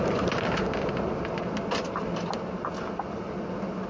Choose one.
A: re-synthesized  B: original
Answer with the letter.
B